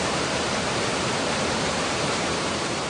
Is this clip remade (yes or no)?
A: yes